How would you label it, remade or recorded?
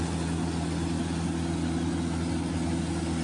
recorded